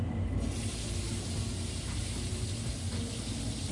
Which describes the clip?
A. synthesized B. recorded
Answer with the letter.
B